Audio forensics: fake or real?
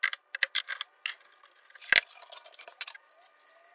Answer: real